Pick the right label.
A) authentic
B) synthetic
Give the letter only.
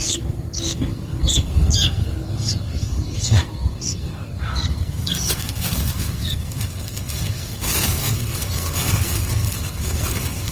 B